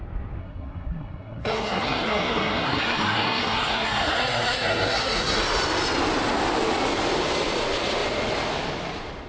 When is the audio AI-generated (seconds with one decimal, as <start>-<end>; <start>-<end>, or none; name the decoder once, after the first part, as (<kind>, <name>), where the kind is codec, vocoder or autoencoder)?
0.4-5.4 (codec, SNAC)